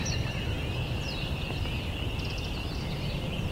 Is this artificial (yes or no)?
no